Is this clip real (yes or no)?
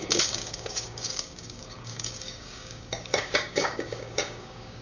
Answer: no